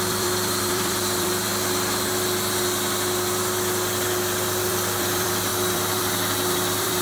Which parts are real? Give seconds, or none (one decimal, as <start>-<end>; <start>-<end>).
1.5-4.7